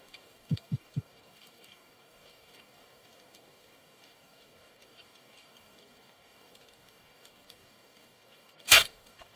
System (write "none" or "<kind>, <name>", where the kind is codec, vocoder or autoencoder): codec, DAC